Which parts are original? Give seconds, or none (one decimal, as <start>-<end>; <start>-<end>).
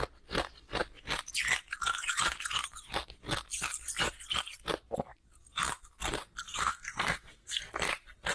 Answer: 0.0-6.5; 7.6-8.3